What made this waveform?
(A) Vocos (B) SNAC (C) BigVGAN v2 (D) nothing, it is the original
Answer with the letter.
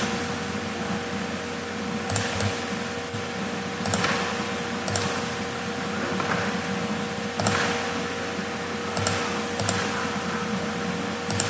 D